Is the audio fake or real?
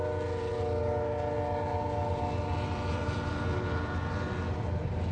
real